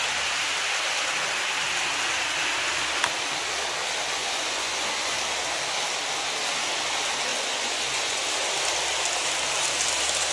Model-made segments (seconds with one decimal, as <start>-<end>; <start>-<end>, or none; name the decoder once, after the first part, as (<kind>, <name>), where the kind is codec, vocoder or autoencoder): 4.2-5.2 (vocoder, Vocos); 7.3-8.2